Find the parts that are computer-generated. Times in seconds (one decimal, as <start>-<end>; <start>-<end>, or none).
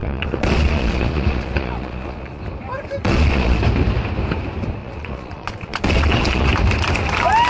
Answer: 0.0-2.4; 3.0-3.6; 4.8-6.5